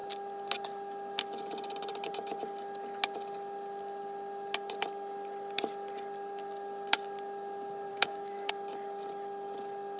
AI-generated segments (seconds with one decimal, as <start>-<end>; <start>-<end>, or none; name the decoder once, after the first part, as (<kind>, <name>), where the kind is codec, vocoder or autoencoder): 7.9-8.5 (codec, DAC)